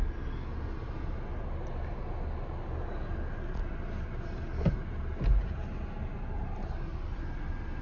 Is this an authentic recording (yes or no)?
yes